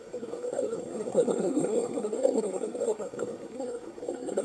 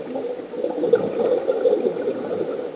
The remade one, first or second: first